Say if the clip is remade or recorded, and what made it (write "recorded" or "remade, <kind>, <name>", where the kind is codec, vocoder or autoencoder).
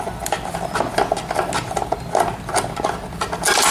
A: recorded